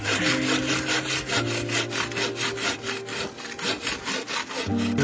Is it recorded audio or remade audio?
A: recorded